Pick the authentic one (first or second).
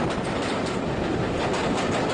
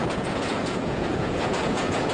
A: first